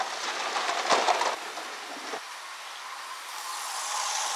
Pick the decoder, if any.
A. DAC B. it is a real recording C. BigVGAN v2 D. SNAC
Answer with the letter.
B